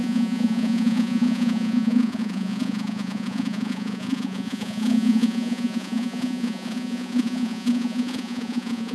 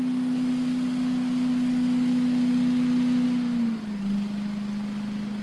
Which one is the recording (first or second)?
second